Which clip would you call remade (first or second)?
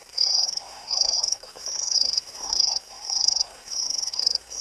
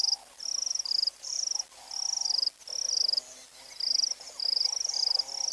first